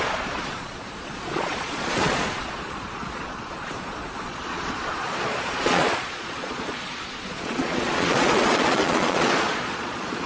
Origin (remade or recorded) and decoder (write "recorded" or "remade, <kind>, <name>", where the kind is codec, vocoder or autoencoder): remade, vocoder, Vocos